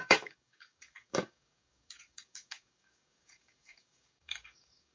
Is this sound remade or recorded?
remade